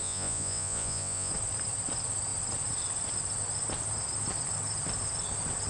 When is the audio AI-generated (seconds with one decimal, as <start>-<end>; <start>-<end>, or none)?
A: 0.0-1.3